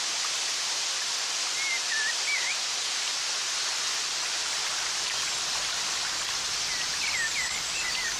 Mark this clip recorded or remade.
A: recorded